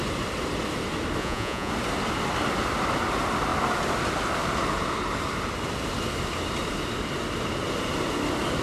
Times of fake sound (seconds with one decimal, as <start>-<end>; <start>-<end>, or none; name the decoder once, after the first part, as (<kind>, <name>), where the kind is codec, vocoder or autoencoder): 1.2-1.7 (vocoder, Vocos)